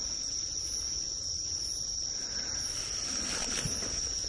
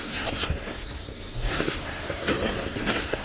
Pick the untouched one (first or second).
first